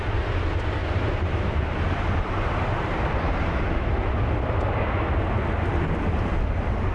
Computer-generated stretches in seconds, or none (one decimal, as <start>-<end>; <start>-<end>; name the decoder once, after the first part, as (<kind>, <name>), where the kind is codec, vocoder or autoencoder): 0.8-3.6 (vocoder, BigVGAN v2)